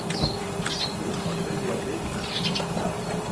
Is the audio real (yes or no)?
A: yes